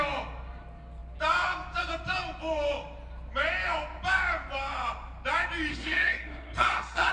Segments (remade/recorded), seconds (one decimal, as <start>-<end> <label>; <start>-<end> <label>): 0.0-5.7 recorded; 5.7-7.1 remade

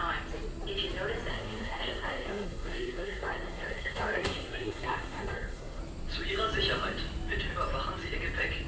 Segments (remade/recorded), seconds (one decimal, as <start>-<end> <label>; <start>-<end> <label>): 0.0-1.3 recorded; 1.3-5.8 remade; 5.8-8.7 recorded

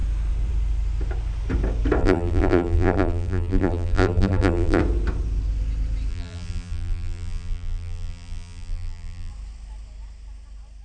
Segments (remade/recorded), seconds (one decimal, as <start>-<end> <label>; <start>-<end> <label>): 0.0-2.0 recorded; 2.0-4.8 remade; 4.8-6.1 recorded; 6.1-9.3 remade; 9.3-10.8 recorded

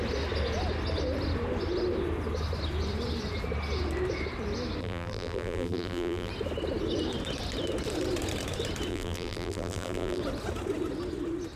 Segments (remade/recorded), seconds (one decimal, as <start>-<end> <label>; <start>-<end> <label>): 0.0-4.8 recorded; 4.8-6.3 remade; 6.3-8.9 recorded; 8.9-10.2 remade; 10.2-11.6 recorded